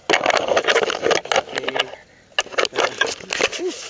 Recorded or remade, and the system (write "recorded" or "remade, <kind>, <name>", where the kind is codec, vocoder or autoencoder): recorded